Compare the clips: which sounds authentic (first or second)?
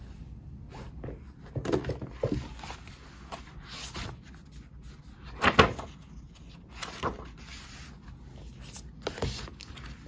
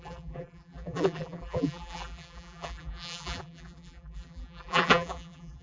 first